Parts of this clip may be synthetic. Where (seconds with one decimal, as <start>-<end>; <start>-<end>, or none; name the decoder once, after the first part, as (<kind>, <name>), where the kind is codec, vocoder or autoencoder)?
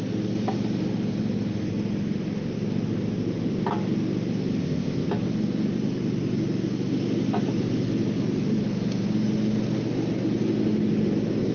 4.6-5.1 (codec, ZipCodec)